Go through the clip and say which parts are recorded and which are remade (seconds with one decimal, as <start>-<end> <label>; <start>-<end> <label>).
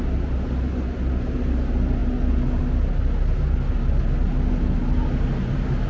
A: 0.0-5.9 recorded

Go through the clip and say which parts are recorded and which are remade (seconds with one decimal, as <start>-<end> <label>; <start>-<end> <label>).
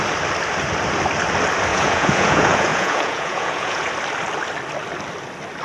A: 0.0-1.7 recorded; 1.7-3.9 remade; 3.9-5.6 recorded